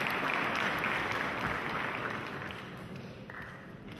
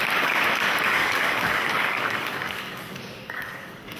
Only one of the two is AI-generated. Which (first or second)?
second